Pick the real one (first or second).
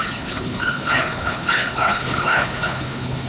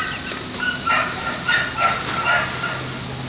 second